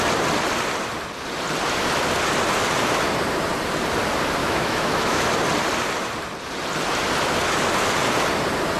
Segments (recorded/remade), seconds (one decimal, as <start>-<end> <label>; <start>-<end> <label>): 0.0-4.4 recorded; 4.4-5.3 remade; 5.3-8.8 recorded